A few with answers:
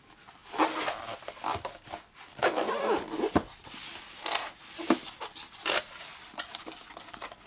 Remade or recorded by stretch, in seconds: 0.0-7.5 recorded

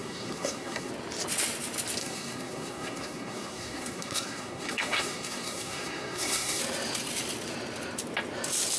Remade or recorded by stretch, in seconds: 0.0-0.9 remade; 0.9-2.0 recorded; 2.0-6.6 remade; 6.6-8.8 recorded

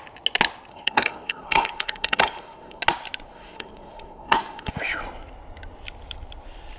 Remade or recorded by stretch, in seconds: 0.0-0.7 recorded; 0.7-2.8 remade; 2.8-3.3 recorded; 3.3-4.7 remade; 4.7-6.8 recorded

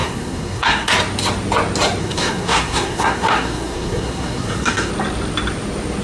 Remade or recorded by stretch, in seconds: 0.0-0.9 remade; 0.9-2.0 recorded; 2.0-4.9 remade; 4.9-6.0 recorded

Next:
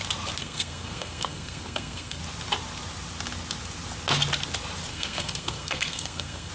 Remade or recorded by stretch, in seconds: 0.0-0.4 recorded; 0.4-2.2 remade; 2.2-4.9 recorded; 4.9-6.5 remade

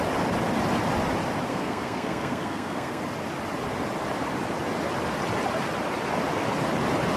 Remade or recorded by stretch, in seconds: 0.0-1.5 recorded; 1.5-3.0 remade; 3.0-7.2 recorded

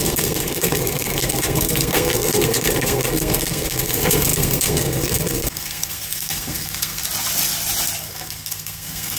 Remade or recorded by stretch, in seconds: 0.0-7.0 remade; 7.0-8.0 recorded; 8.0-9.2 remade

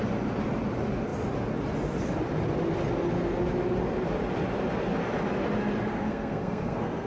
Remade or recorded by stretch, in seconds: 0.0-5.9 recorded; 5.9-7.1 remade